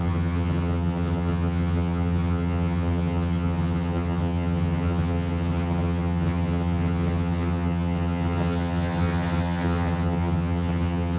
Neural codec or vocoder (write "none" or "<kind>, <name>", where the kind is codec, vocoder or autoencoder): vocoder, HiFi-GAN